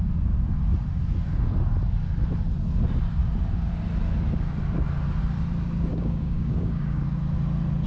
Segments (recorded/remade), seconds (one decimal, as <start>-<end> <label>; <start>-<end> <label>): 0.0-5.9 recorded; 5.9-7.0 remade; 7.0-7.9 recorded